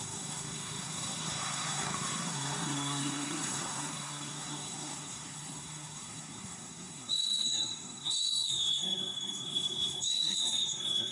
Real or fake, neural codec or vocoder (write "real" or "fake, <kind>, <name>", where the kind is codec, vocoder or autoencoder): fake, codec, SNAC